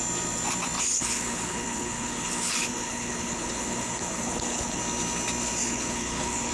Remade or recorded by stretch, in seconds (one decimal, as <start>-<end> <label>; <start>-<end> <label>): 0.0-0.9 recorded; 0.9-4.8 remade; 4.8-5.6 recorded; 5.6-6.5 remade